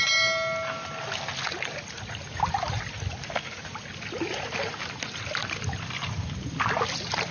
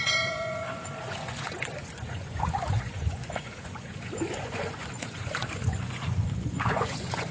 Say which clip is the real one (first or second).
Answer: first